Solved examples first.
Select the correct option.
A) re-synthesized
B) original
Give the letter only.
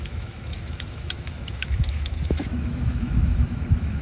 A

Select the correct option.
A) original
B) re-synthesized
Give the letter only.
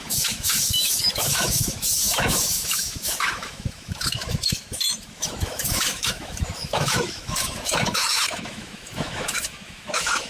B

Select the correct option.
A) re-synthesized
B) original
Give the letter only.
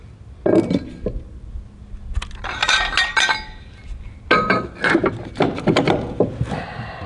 B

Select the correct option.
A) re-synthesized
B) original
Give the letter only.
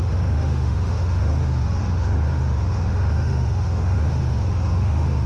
A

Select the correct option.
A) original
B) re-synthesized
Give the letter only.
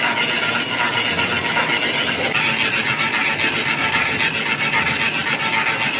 A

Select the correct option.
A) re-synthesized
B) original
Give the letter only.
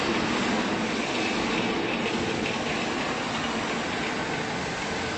B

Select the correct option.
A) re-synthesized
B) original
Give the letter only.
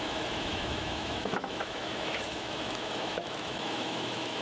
A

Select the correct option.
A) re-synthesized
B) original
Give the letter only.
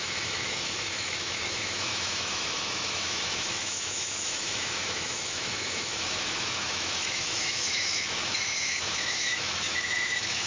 A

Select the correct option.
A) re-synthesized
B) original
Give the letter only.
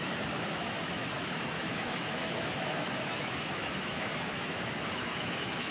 A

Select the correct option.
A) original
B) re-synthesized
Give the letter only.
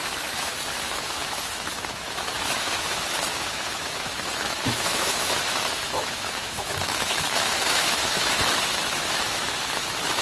B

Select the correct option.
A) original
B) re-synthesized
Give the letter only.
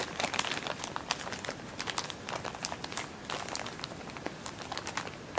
A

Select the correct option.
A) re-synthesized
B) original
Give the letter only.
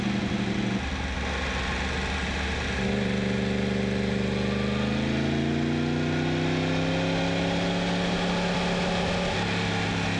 B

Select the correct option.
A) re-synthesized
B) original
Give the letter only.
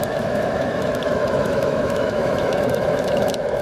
A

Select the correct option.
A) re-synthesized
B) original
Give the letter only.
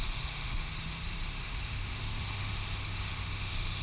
A